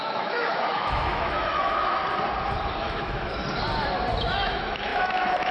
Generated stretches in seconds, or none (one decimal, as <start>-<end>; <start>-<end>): 0.0-2.0; 2.8-3.4; 4.2-5.5